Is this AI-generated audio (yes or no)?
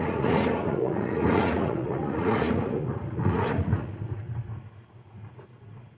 yes